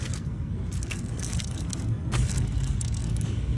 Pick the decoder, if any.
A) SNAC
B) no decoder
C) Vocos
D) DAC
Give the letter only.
A